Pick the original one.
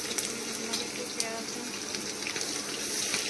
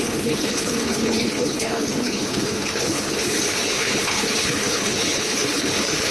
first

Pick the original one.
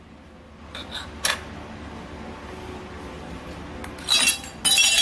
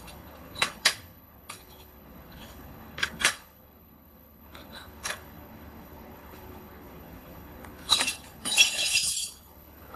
first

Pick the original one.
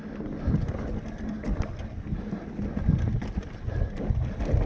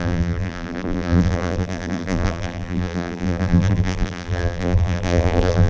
first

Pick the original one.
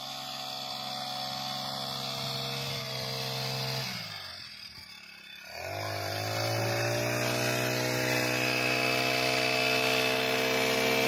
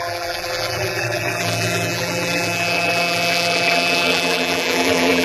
first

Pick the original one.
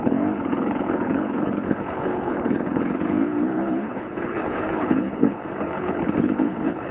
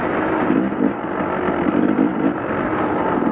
second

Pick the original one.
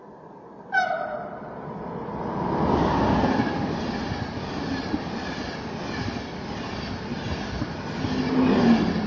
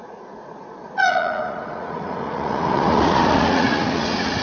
first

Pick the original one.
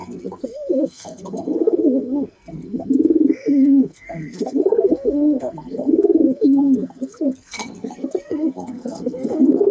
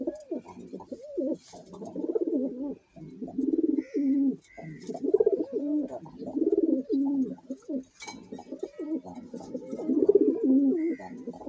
second